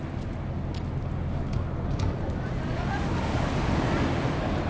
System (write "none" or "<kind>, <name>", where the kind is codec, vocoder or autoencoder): none